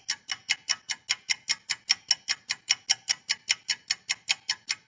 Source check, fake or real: real